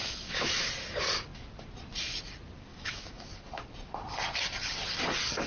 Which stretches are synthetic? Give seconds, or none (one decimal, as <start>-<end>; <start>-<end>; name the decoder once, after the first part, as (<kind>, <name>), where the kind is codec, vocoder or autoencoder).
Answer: 0.0-0.7 (autoencoder, DAC-VAE); 2.7-3.3